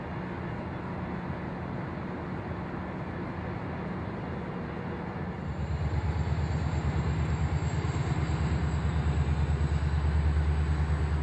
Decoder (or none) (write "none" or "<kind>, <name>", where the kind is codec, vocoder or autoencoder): none